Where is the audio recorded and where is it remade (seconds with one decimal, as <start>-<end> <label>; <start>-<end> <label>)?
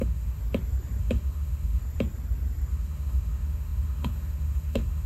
0.0-0.4 remade; 0.4-1.0 recorded; 1.0-1.8 remade; 1.8-2.7 recorded; 2.7-5.1 remade